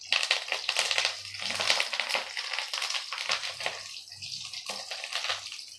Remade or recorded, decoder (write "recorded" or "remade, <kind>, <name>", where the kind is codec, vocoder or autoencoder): recorded